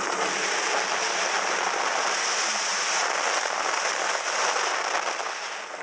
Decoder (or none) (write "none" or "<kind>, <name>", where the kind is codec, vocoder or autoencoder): none